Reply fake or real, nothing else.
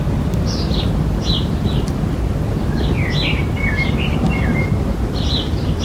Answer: real